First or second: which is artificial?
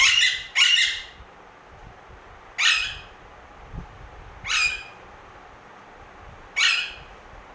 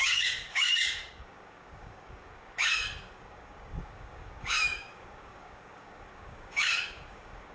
second